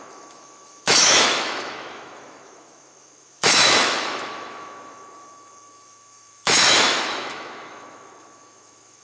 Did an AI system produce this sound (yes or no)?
yes